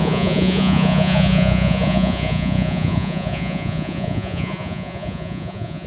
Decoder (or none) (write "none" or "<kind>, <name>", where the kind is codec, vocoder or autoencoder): vocoder, Vocos